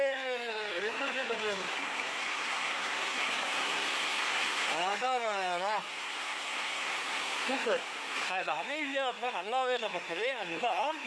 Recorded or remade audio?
remade